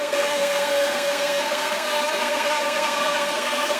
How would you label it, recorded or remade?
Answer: remade